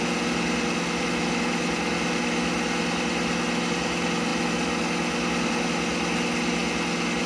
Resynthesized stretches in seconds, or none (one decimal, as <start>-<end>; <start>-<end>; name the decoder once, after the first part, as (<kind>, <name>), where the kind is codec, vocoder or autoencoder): none